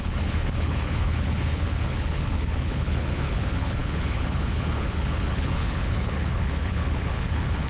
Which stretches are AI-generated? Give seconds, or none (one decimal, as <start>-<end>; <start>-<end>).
0.0-7.7